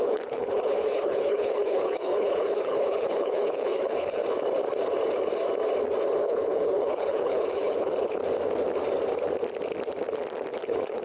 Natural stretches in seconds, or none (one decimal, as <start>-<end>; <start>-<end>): 4.2-6.2; 8.2-10.6